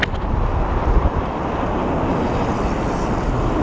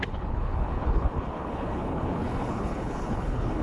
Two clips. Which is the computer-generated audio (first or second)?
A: second